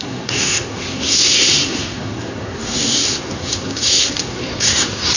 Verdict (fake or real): fake